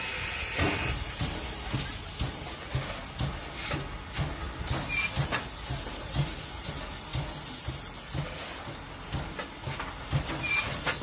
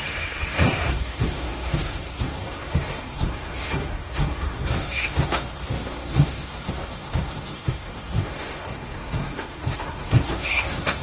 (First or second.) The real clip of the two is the first